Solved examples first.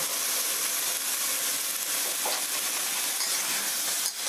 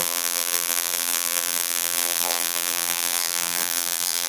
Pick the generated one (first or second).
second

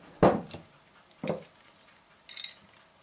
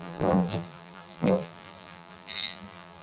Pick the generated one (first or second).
second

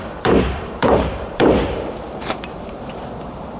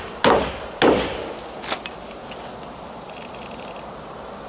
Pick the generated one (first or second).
first